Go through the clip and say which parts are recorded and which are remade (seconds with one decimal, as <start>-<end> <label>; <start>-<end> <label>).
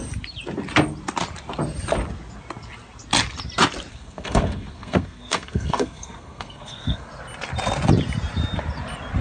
0.0-3.9 recorded; 3.9-7.1 remade; 7.1-9.2 recorded